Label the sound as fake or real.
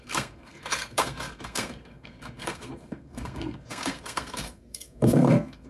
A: fake